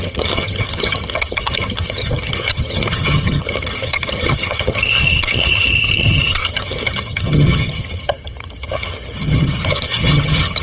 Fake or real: fake